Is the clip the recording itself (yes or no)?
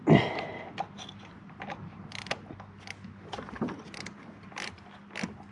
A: no